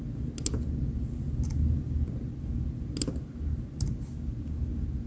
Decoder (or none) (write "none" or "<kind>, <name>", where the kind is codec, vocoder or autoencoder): none